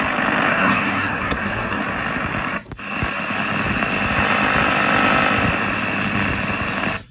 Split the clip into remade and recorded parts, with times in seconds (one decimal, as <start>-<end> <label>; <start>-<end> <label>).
0.0-0.5 recorded; 0.5-1.8 remade; 1.8-7.1 recorded